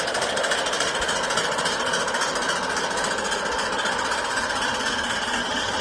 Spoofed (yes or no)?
no